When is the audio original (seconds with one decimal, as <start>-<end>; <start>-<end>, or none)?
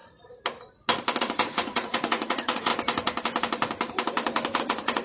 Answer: 0.0-1.2; 2.7-4.6